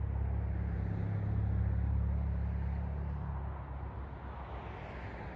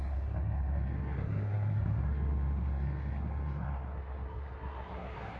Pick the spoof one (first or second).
second